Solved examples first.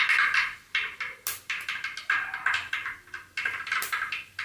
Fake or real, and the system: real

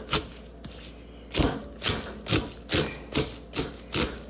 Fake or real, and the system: real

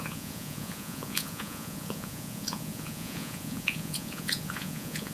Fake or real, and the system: fake, vocoder, Vocos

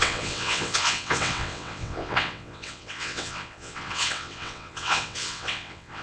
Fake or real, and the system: fake, vocoder, WaveNeXt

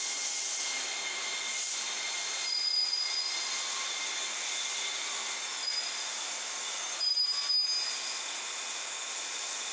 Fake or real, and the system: real